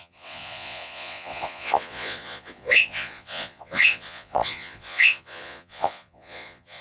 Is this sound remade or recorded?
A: remade